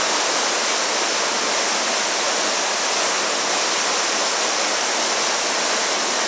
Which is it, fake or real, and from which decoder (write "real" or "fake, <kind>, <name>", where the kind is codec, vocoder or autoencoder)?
real